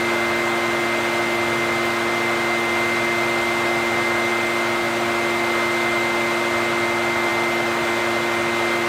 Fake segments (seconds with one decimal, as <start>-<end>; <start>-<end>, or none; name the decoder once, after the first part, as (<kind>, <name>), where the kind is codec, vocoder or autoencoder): none